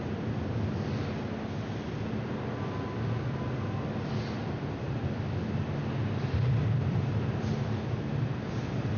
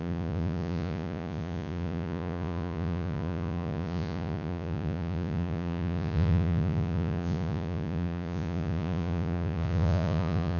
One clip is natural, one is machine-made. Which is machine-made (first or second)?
second